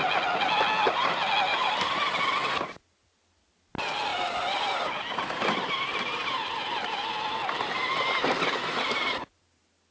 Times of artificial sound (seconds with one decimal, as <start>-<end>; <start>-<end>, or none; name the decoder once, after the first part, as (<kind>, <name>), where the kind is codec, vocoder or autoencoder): 1.5-2.2 (vocoder, BigVGAN v2); 4.1-9.2